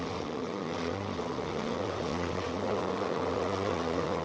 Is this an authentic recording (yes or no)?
no